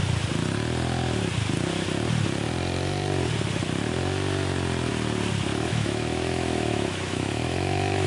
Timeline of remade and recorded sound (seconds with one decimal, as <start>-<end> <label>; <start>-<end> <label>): 0.0-5.5 recorded; 5.5-8.1 remade